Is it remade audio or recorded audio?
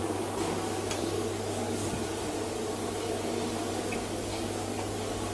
remade